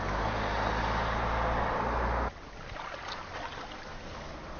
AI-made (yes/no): no